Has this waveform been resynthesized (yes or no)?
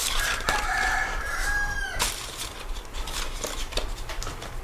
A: yes